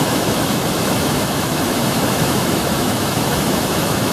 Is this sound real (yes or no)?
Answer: no